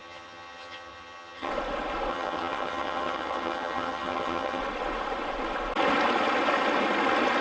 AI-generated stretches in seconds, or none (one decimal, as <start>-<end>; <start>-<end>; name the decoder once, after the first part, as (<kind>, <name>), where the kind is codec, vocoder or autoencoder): 0.0-1.5 (vocoder, HiFi-GAN); 2.1-4.6